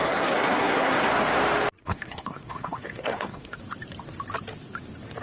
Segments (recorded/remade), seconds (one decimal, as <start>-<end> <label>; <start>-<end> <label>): 0.0-1.1 remade; 1.1-1.8 recorded; 1.8-3.6 remade; 3.6-5.2 recorded